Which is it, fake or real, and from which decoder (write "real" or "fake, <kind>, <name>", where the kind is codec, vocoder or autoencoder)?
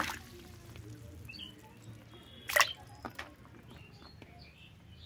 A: real